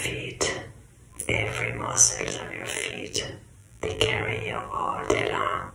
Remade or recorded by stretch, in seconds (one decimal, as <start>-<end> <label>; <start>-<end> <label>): 0.0-1.1 recorded; 1.1-3.2 remade; 3.2-3.6 recorded; 3.6-5.7 remade